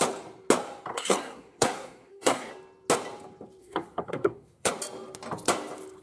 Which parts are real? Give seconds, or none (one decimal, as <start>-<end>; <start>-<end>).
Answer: 0.0-0.9; 2.5-3.6; 4.7-6.0